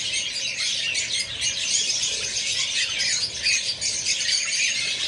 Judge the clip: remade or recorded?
recorded